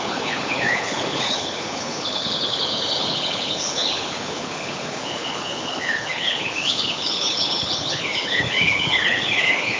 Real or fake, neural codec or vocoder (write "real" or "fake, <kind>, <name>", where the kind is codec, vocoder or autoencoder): fake, codec, HILCodec